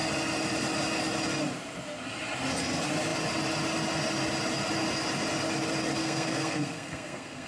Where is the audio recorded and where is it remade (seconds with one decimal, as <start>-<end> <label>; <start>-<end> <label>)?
0.0-6.0 recorded; 6.0-7.5 remade

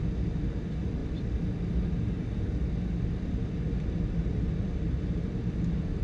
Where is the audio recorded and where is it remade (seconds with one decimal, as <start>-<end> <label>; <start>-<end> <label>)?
0.0-6.0 recorded